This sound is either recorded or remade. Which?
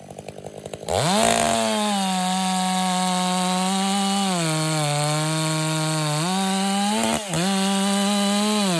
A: recorded